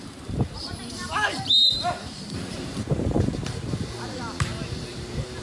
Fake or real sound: fake